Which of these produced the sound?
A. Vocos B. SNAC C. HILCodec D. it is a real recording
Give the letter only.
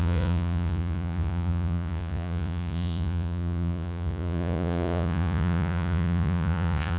A